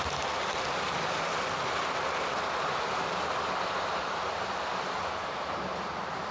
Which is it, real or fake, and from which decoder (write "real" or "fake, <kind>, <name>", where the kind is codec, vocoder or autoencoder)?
fake, vocoder, BigVGAN v2